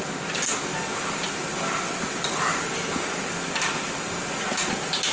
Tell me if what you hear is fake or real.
real